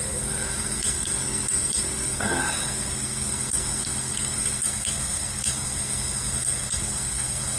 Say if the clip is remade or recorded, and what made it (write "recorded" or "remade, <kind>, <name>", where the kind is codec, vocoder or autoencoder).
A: remade, codec, SNAC